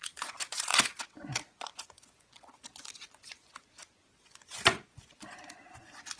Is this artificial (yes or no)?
yes